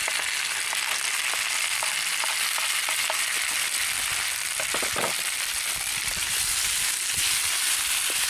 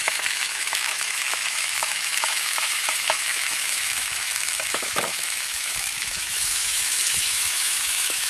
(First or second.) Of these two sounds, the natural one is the first